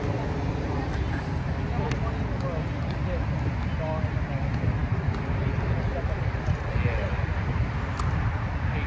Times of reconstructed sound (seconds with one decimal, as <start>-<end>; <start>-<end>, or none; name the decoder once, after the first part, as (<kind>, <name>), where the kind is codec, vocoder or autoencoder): none